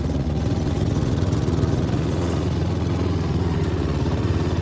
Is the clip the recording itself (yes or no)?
no